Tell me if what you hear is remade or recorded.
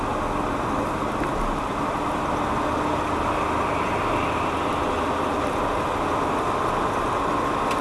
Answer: recorded